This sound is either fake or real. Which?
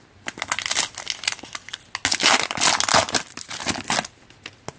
real